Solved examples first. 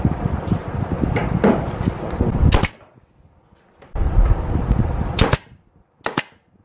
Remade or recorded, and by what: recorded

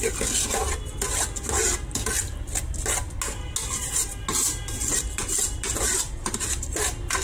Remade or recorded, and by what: recorded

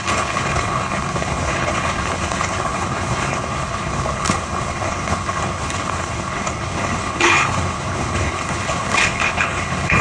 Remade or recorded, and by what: remade, codec, HILCodec